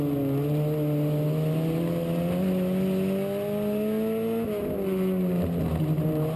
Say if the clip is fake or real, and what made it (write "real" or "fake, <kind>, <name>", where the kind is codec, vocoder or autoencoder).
real